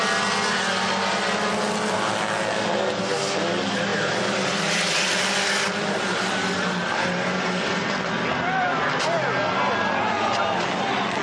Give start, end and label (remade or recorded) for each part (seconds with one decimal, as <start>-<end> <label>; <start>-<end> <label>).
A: 0.0-3.9 recorded; 3.9-9.0 remade; 9.0-11.2 recorded